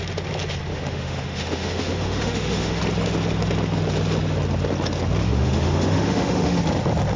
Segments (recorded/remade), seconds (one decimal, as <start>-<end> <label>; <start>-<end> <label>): 0.0-0.7 recorded; 0.7-2.8 remade; 2.8-5.2 recorded; 5.2-6.6 remade; 6.6-7.2 recorded